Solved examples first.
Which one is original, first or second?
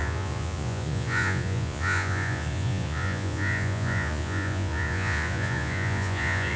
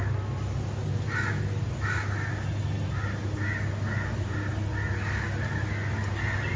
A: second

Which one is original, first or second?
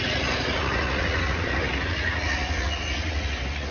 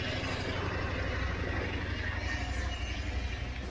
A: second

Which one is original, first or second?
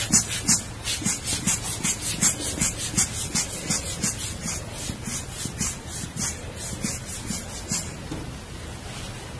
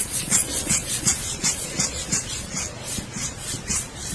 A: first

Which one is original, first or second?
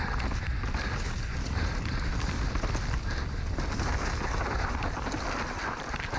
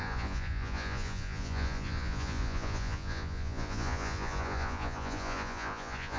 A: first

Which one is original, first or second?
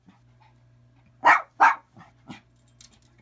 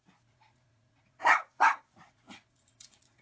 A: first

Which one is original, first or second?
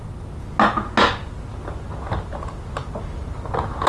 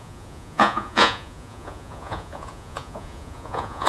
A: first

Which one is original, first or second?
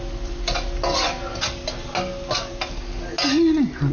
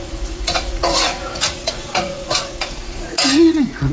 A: first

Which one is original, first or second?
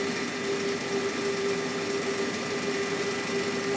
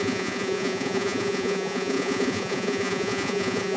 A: first